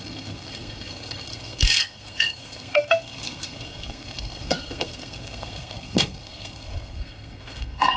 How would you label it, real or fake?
fake